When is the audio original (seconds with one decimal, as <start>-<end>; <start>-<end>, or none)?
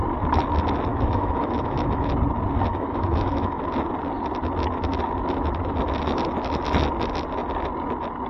0.0-0.9; 2.1-2.7; 3.6-8.3